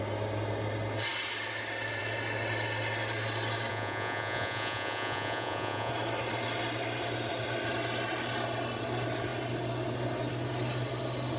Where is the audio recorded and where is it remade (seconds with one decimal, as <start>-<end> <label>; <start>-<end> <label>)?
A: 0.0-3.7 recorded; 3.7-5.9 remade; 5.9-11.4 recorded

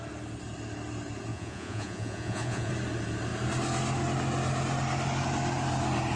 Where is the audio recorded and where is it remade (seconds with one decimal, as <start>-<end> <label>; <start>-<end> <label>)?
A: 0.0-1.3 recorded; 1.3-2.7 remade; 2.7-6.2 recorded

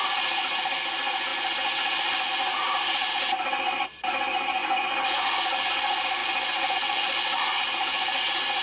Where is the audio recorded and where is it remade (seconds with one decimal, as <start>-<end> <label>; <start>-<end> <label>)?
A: 0.0-4.6 recorded; 4.6-5.7 remade; 5.7-6.2 recorded; 6.2-7.2 remade; 7.2-8.6 recorded